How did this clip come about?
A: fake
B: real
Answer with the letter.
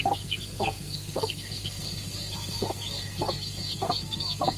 A